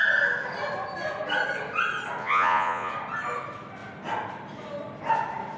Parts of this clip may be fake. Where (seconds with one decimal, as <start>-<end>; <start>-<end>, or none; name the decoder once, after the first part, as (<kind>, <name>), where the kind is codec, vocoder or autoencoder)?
2.2-2.9 (vocoder, Vocos)